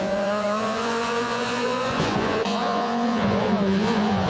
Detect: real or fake fake